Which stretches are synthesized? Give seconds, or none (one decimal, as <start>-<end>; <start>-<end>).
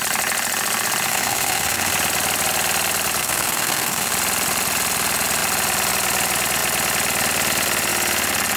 1.1-1.9; 3.2-4.1